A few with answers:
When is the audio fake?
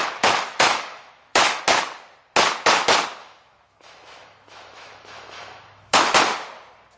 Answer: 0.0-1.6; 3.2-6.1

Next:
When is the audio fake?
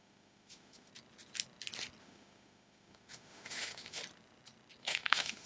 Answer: 0.0-0.9; 2.0-4.0; 4.8-5.5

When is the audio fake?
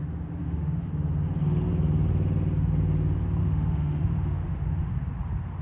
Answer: 0.4-0.9; 3.4-4.9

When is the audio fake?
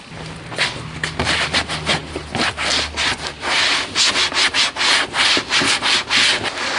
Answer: none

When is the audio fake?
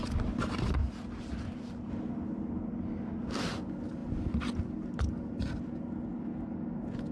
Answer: none